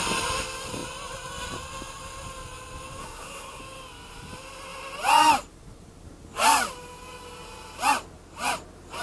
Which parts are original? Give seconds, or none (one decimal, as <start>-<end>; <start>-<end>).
0.0-3.0; 3.6-9.0